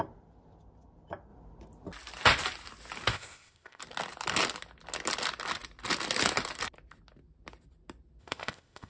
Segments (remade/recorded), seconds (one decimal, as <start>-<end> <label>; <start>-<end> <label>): 0.0-3.1 recorded; 3.1-3.8 remade; 3.8-8.2 recorded; 8.2-8.9 remade